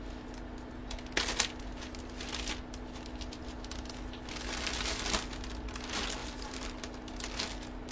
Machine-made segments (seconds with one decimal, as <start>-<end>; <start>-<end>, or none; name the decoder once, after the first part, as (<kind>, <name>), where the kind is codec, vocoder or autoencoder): 6.2-6.8 (vocoder, BigVGAN v2)